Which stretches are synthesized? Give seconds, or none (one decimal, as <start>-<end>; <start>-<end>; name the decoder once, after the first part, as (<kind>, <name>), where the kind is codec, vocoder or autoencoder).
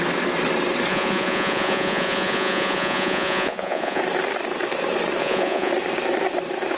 0.9-4.0 (vocoder, Vocos); 5.2-5.7